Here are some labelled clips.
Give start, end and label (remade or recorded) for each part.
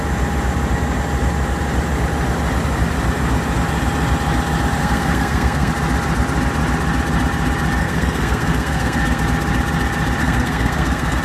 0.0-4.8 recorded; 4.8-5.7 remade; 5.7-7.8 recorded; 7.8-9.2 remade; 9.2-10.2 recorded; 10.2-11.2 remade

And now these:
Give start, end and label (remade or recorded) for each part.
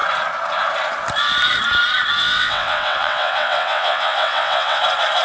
0.0-2.2 recorded; 2.2-4.8 remade; 4.8-5.2 recorded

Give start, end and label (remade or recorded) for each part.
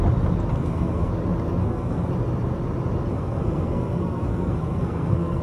0.0-0.5 recorded; 0.5-1.1 remade; 1.1-1.6 recorded; 1.6-2.1 remade; 2.1-3.1 recorded; 3.1-5.4 remade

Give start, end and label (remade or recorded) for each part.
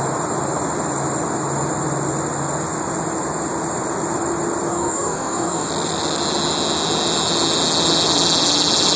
0.0-4.7 recorded; 4.7-5.7 remade; 5.7-9.0 recorded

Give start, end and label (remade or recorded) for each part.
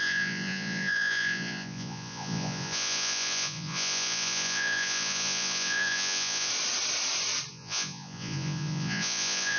0.0-6.5 remade; 6.5-7.5 recorded; 7.5-9.6 remade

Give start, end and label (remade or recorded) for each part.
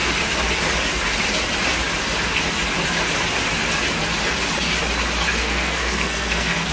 0.0-5.4 recorded; 5.4-6.7 remade